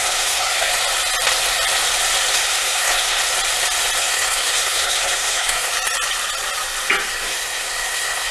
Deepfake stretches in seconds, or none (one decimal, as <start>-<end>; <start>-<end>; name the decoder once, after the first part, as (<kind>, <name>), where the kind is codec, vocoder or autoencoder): 0.0-0.7 (codec, SNAC); 2.3-3.2; 4.0-5.7; 7.1-8.3